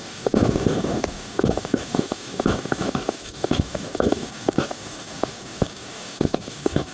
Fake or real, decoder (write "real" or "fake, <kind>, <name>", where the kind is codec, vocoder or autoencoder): fake, codec, DAC